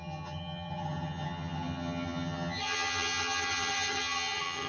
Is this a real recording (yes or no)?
no